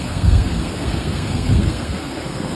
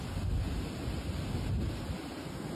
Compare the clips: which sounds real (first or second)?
second